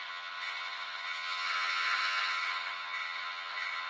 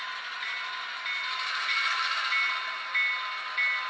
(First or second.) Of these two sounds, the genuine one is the second